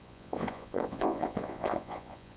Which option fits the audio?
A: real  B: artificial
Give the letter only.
B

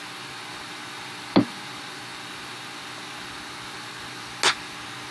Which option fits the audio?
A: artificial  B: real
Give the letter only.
B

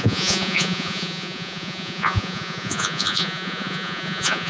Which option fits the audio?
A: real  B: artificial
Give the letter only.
B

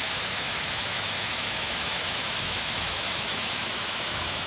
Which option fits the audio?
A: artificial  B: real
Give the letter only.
A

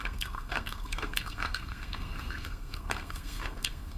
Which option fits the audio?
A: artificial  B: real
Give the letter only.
A